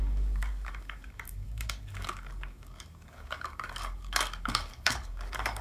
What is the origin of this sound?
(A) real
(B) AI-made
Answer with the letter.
B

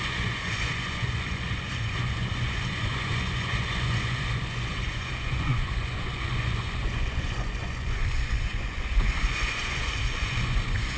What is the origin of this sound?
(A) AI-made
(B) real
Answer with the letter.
A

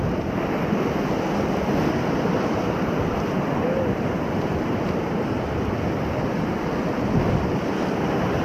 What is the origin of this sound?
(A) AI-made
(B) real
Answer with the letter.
B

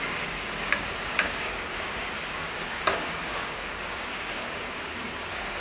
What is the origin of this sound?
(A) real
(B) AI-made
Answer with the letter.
B